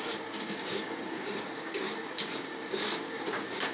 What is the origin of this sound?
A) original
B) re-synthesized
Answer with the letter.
B